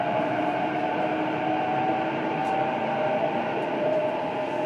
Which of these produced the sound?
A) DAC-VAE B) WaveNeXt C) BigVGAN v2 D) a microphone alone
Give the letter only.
C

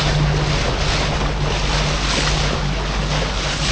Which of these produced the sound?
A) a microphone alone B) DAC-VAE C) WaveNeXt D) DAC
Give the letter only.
A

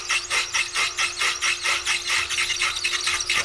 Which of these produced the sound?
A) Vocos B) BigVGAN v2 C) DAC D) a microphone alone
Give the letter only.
D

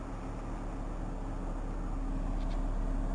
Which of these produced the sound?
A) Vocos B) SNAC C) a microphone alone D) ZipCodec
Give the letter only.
C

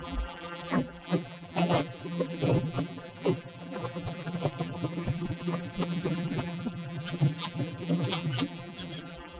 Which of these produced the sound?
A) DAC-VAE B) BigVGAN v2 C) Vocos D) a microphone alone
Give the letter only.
B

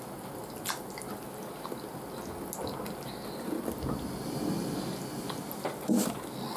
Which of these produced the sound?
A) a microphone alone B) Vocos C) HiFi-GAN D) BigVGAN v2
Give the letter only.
A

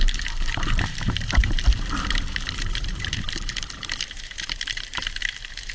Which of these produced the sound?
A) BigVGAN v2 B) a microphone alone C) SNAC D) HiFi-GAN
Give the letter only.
A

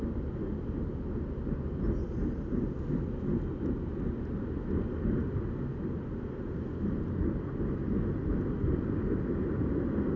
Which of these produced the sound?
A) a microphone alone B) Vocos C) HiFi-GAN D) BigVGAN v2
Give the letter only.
A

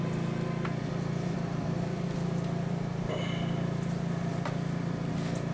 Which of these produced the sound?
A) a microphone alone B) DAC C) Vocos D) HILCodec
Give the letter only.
A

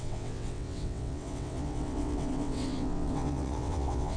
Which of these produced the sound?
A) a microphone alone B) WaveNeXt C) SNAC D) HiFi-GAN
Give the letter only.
B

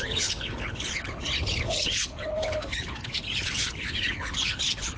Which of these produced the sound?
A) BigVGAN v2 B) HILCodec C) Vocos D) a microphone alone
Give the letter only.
B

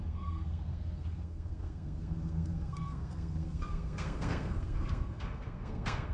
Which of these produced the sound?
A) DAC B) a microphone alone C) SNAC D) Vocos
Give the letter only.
C